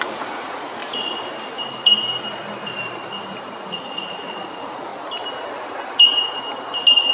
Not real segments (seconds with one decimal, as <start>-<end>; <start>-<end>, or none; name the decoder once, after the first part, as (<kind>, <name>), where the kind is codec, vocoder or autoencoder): 0.0-0.8 (vocoder, Vocos); 3.4-4.9